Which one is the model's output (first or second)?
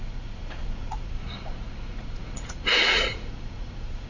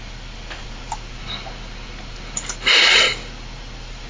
first